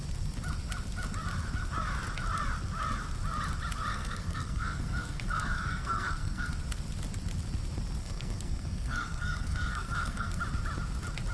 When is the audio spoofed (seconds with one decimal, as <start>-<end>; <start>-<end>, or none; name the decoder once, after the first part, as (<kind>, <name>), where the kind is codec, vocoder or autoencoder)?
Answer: 3.9-6.5 (codec, SNAC); 8.0-10.4